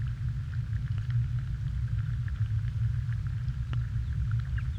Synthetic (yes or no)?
no